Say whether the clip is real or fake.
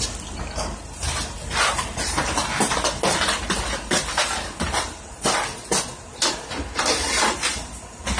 real